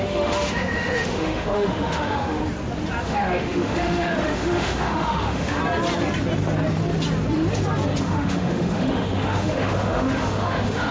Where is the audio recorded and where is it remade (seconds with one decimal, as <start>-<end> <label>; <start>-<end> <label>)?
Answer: 0.0-2.4 remade; 2.4-3.0 recorded; 3.0-5.6 remade; 5.6-8.0 recorded; 8.0-10.9 remade